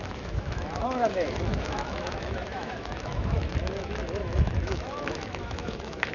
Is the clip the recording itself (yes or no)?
no